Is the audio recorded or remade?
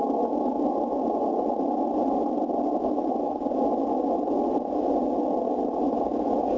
recorded